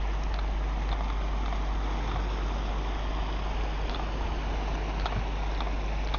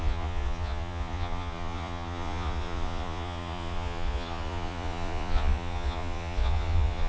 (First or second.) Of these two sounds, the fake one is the second